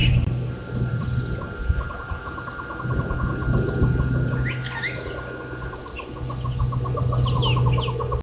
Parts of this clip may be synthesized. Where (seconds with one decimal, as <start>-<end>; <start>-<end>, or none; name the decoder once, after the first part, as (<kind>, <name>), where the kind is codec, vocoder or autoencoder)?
0.0-2.2 (vocoder, BigVGAN v2)